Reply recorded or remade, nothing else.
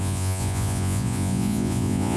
remade